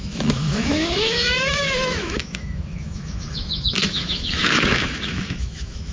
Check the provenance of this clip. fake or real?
fake